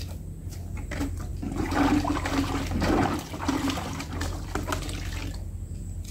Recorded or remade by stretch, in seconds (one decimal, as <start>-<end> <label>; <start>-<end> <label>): 0.0-3.0 recorded; 3.0-4.4 remade; 4.4-6.1 recorded